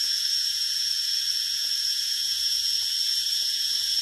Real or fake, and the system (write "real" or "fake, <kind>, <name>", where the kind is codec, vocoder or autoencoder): fake, vocoder, Vocos